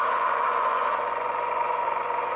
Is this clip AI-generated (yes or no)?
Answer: yes